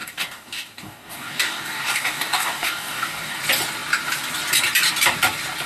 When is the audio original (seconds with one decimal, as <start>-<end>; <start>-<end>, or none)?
3.4-5.7